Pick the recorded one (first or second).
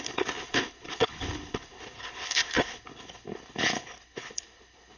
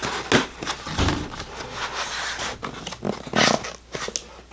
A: second